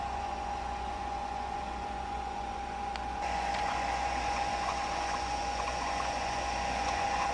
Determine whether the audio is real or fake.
fake